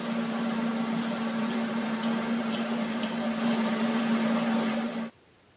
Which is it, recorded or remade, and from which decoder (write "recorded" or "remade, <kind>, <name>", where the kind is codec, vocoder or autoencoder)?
remade, vocoder, BigVGAN v2